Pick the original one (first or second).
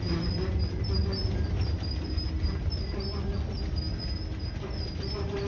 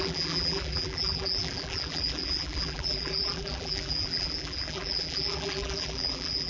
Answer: first